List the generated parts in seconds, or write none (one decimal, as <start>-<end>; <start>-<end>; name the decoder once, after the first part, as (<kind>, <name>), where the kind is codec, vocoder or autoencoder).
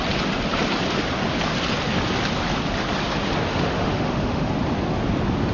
3.5-4.5 (autoencoder, DAC-VAE)